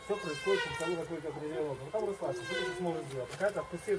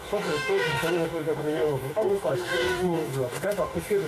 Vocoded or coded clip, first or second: second